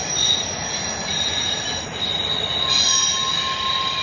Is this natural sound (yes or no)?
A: yes